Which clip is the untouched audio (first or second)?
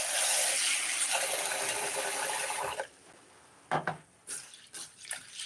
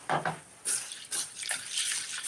first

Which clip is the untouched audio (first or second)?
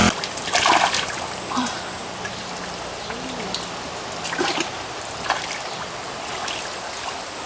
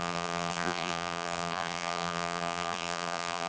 first